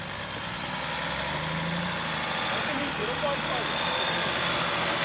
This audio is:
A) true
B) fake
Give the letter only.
A